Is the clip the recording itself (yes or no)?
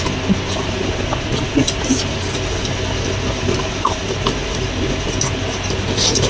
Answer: yes